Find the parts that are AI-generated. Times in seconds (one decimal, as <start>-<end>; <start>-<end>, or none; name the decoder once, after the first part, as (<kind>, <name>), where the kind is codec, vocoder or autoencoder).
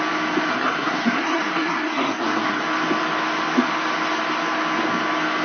0.5-2.6 (codec, SNAC)